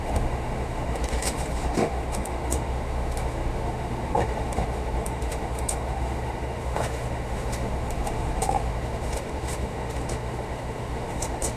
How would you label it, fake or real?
fake